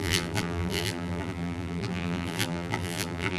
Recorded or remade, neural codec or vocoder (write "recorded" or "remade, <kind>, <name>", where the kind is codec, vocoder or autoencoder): remade, vocoder, BigVGAN v2